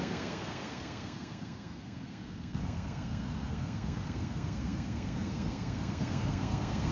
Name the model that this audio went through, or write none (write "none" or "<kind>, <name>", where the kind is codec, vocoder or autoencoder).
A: codec, SNAC